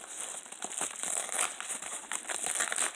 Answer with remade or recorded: recorded